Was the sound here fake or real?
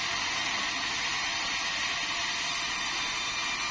real